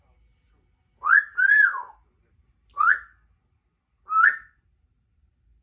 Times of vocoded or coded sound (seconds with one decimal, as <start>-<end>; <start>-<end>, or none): none